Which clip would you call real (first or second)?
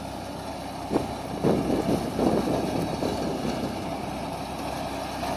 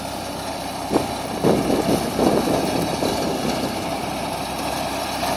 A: first